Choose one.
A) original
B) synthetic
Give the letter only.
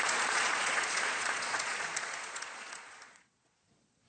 B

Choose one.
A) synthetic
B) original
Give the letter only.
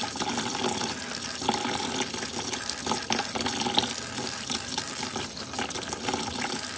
B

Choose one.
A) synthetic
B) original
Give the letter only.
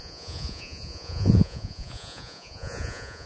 A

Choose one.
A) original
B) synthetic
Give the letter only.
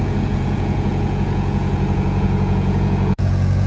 B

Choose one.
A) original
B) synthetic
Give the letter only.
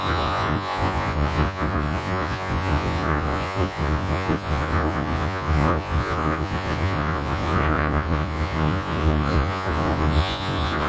B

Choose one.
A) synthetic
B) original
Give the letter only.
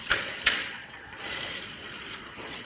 A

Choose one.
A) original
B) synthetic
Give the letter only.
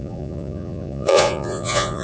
B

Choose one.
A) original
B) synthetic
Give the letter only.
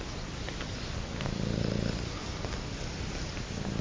A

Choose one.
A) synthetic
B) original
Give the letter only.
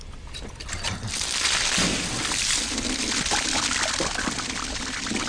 B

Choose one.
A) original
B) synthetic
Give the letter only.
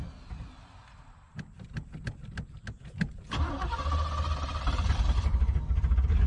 A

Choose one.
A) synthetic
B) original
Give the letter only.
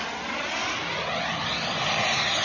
B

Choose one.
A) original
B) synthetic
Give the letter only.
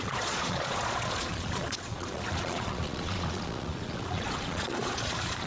B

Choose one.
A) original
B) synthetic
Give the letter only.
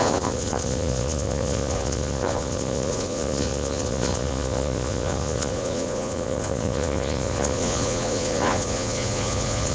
B